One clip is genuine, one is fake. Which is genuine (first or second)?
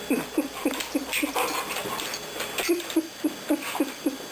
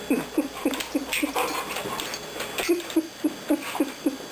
second